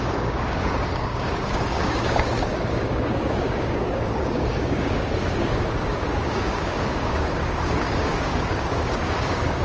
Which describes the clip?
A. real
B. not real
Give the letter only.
B